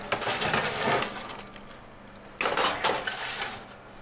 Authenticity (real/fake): real